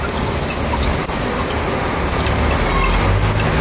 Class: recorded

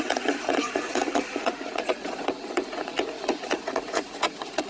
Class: remade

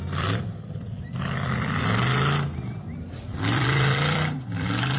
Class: remade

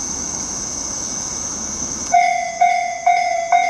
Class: remade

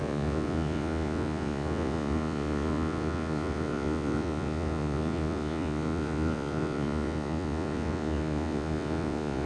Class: remade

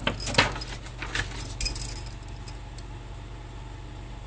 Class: recorded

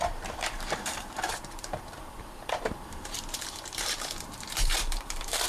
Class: remade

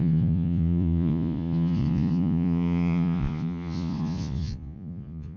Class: remade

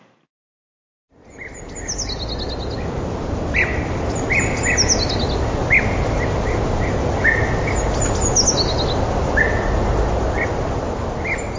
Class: recorded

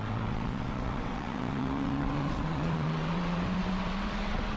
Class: remade